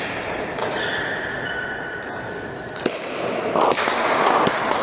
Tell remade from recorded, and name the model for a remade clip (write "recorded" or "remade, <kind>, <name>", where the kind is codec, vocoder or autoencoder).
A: recorded